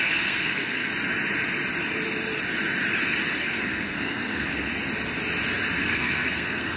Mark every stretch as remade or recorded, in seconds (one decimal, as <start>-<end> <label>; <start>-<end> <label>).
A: 0.0-0.9 remade; 0.9-3.4 recorded; 3.4-4.7 remade; 4.7-5.8 recorded; 5.8-6.8 remade